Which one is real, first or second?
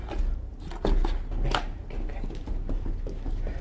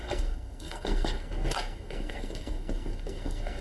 first